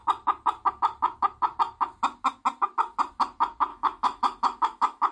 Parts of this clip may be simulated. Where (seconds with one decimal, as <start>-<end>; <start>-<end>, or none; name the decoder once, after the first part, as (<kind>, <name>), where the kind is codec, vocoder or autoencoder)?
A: 3.7-5.1 (autoencoder, DAC-VAE)